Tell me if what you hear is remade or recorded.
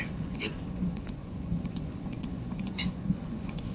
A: remade